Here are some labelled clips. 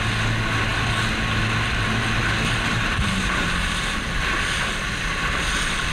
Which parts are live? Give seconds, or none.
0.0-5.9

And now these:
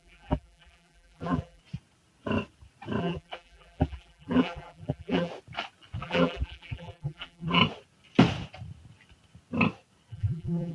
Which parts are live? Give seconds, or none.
1.6-3.0; 5.3-6.0; 7.6-10.1

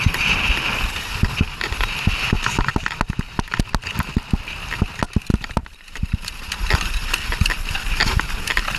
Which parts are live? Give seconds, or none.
0.0-5.3; 6.4-8.8